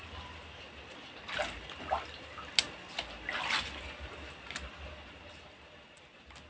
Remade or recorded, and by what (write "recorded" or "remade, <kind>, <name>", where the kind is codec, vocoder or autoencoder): recorded